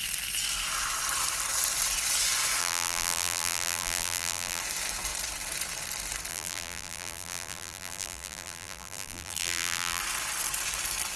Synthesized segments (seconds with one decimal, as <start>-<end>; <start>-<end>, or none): 2.6-4.6; 6.3-10.0